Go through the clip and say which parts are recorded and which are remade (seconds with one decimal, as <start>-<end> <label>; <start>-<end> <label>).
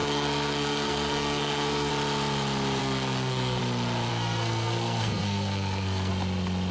0.0-1.9 remade; 1.9-2.8 recorded; 2.8-3.6 remade; 3.6-4.1 recorded; 4.1-6.1 remade; 6.1-6.7 recorded